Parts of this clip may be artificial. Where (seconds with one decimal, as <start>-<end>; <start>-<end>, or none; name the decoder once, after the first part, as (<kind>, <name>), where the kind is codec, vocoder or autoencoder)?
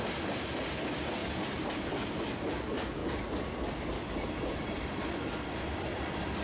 0.0-1.2 (vocoder, BigVGAN v2); 2.4-6.4